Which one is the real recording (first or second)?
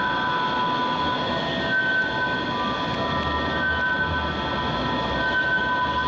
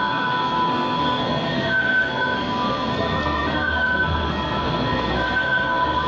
first